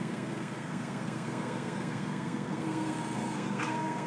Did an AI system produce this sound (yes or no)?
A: yes